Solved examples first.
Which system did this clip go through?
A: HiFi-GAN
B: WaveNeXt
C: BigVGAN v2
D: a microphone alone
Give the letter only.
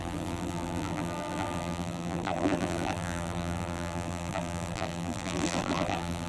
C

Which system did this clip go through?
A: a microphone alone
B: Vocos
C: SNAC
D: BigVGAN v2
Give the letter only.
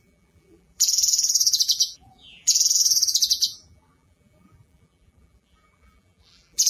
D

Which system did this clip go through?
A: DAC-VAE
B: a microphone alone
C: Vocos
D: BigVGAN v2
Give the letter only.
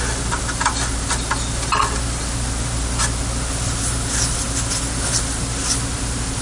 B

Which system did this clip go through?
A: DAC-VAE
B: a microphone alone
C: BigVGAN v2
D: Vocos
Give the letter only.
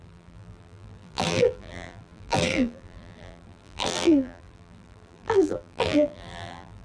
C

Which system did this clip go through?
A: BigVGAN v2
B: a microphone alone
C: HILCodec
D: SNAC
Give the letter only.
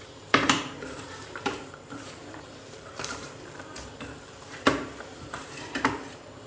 A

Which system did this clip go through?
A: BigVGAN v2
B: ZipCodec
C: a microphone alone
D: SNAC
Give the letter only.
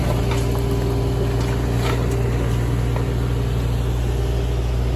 C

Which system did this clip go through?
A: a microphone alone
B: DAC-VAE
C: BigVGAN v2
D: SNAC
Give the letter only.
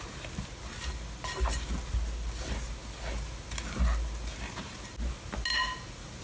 A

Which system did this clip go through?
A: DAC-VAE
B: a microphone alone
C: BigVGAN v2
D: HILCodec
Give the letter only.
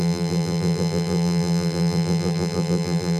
C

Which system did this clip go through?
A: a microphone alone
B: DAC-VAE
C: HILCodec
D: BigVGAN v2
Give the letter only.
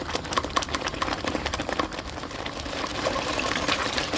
D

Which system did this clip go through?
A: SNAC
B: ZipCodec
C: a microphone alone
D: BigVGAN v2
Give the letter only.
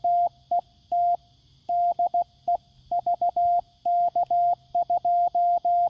C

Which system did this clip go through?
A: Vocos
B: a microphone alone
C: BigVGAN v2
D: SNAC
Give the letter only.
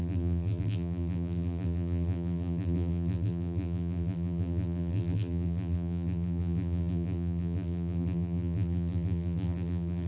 C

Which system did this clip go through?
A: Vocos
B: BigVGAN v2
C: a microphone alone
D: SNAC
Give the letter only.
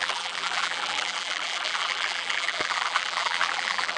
B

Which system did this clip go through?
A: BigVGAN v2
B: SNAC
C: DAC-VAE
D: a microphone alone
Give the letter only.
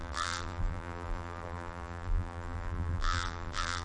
A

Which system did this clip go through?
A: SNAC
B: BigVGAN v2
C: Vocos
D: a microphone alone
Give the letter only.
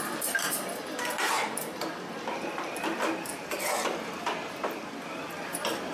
B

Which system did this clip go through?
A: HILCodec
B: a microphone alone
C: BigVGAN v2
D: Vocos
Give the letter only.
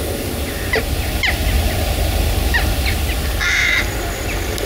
B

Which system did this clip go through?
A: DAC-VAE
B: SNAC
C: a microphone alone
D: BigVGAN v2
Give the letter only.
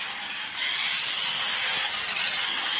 C